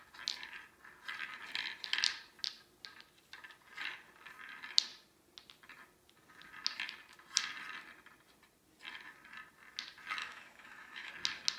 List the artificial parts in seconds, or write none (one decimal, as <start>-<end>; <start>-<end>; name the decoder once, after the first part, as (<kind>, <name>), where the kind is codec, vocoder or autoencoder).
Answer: 10.2-11.1 (autoencoder, DAC-VAE)